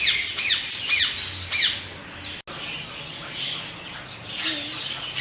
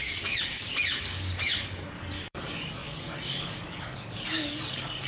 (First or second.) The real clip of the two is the first